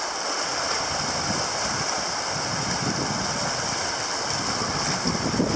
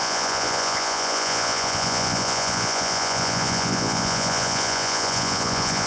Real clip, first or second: first